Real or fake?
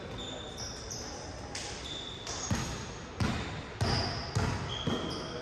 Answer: real